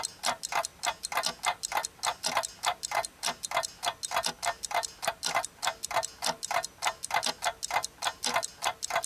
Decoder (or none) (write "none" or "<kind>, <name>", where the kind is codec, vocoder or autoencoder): none